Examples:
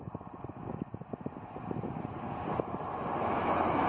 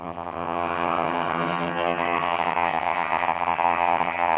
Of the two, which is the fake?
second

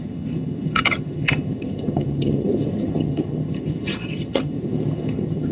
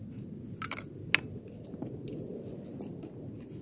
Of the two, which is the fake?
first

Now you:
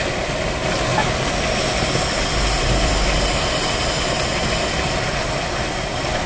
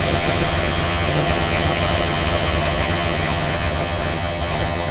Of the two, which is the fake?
second